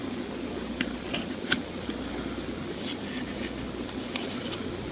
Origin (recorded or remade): recorded